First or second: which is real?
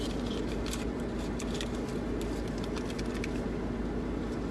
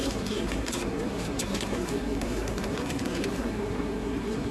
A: first